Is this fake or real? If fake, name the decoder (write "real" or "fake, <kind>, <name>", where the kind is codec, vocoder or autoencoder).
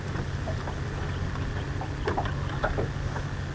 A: real